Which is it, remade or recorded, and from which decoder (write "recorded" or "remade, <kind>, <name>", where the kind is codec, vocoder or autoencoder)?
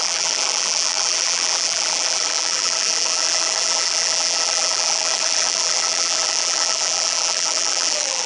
remade, vocoder, BigVGAN v2